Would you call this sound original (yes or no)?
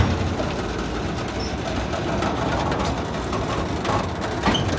yes